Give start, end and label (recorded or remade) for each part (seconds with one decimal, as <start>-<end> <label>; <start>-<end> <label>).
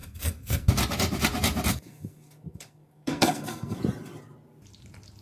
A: 0.0-0.7 remade; 0.7-1.7 recorded; 1.7-3.8 remade; 3.8-5.2 recorded